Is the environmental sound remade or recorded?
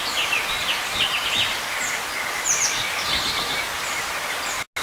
recorded